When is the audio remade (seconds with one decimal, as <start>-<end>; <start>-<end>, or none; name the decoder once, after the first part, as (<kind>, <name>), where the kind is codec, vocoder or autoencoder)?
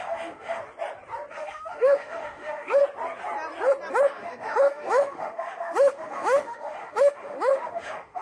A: 0.0-0.6 (autoencoder, DAC-VAE); 1.3-2.8; 3.9-8.2